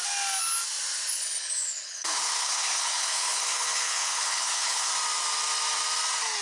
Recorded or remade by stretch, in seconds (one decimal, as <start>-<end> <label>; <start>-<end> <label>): 0.0-1.1 recorded; 1.1-4.9 remade; 4.9-6.4 recorded